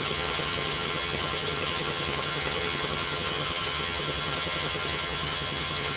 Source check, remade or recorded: remade